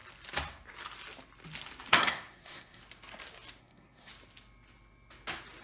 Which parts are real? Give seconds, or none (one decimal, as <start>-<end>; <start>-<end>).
0.0-1.9; 2.8-3.6; 4.1-5.6